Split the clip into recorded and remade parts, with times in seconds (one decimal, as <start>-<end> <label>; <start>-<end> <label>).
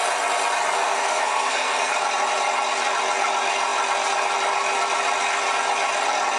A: 0.0-0.8 recorded; 0.8-1.9 remade; 1.9-6.4 recorded